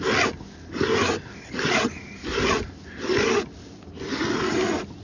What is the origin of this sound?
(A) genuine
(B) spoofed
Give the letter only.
A